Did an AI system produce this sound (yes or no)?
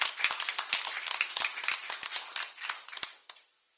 no